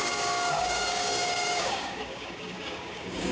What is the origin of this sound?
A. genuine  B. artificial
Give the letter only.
B